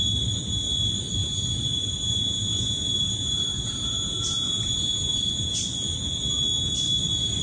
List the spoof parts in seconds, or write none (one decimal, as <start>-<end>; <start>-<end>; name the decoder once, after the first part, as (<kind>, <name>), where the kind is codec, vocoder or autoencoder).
1.2-5.6 (vocoder, Vocos)